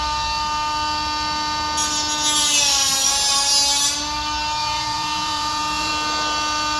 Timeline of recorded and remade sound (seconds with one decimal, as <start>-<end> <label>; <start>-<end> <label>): 0.0-4.6 recorded; 4.6-5.9 remade; 5.9-6.8 recorded